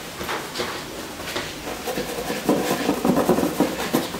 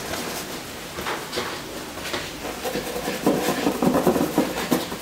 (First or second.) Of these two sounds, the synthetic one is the first